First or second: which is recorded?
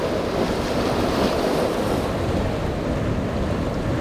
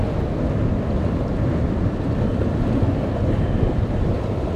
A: second